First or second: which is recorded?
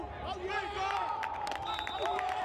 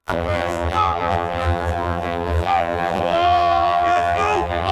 first